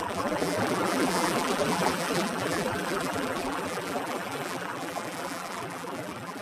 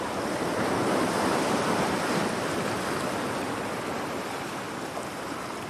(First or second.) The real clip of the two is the second